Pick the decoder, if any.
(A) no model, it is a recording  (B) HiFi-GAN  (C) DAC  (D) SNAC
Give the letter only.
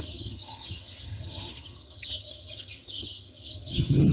B